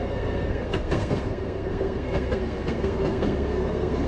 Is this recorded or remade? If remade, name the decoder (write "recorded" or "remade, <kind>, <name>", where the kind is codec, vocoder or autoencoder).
remade, codec, SNAC